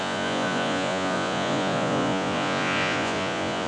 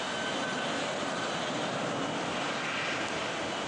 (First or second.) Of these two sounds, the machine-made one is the first